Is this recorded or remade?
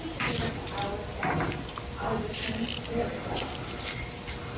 recorded